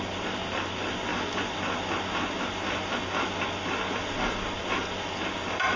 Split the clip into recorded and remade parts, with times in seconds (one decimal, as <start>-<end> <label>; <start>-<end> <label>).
0.0-5.8 recorded